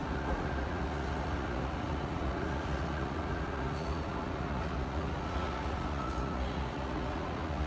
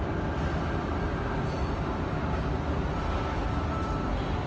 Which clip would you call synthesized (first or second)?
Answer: first